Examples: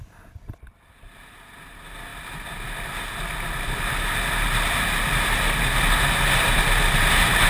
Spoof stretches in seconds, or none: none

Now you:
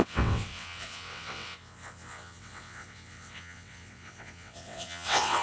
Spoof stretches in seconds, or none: 0.0-5.4 (vocoder, WaveNeXt)